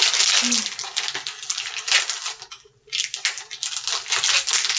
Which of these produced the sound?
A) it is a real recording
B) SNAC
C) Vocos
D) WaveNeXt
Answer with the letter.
A